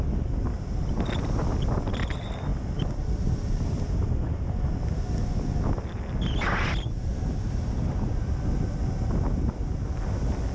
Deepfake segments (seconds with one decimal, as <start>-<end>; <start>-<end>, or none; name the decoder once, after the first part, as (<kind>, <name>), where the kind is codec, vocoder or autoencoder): 7.1-8.1 (vocoder, BigVGAN v2)